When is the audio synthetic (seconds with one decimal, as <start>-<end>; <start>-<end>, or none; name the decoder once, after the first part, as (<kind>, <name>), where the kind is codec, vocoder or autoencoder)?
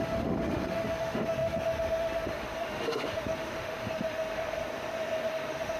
0.0-4.6 (autoencoder, DAC-VAE); 5.3-5.8